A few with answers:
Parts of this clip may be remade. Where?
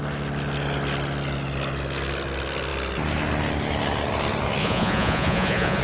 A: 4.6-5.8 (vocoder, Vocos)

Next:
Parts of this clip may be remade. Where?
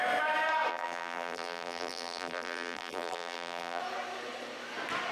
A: 0.7-3.8 (vocoder, BigVGAN v2)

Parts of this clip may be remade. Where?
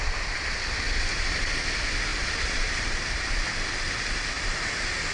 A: 2.1-3.3 (vocoder, BigVGAN v2)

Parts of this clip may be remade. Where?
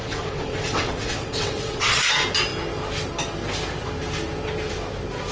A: 0.0-2.0 (vocoder, WaveNeXt)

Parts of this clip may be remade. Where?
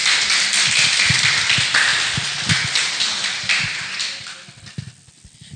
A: none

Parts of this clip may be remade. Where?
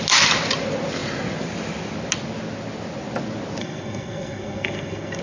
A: 3.6-5.2 (codec, SNAC)